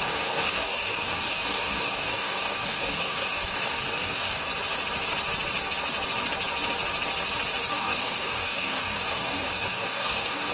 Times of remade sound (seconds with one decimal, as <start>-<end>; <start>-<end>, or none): 0.0-4.5; 7.7-10.5